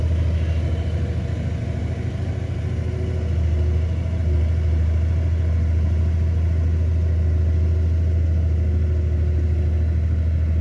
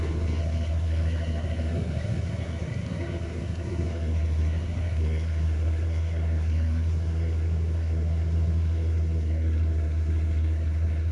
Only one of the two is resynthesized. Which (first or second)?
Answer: second